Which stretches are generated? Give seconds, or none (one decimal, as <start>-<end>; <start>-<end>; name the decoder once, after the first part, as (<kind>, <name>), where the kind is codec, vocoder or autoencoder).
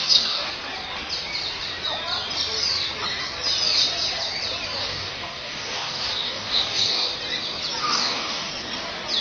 0.0-0.5 (codec, DAC); 4.8-7.1; 7.8-8.5